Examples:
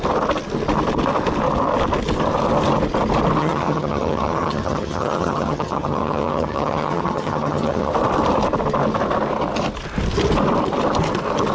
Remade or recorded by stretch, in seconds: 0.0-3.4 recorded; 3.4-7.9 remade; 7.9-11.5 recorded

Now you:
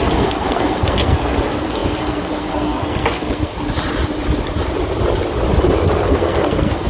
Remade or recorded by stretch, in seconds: 0.0-3.5 remade; 3.5-6.1 recorded; 6.1-6.9 remade

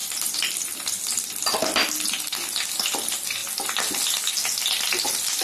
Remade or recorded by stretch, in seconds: 0.0-5.4 recorded

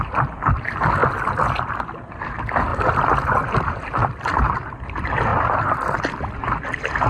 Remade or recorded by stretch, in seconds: 0.0-1.0 remade; 1.0-2.0 recorded; 2.0-7.1 remade

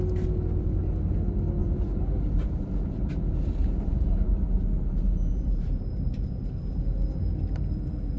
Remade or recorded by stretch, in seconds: 0.0-1.6 recorded; 1.6-6.5 remade; 6.5-8.2 recorded